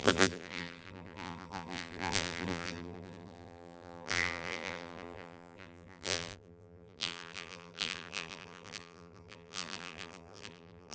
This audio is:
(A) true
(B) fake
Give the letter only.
B